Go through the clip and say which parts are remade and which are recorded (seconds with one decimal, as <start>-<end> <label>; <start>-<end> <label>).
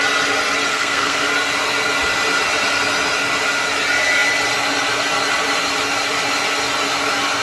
0.0-0.7 recorded; 0.7-1.3 remade; 1.3-7.4 recorded